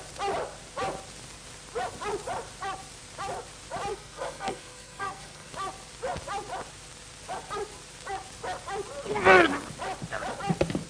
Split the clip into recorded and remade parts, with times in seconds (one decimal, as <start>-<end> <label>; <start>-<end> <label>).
0.0-3.9 recorded; 3.9-5.5 remade; 5.5-10.9 recorded